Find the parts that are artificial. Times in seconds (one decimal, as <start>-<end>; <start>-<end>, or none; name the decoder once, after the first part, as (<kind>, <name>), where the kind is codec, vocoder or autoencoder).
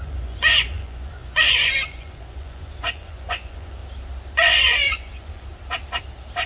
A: 0.0-3.8 (vocoder, Vocos); 4.3-5.5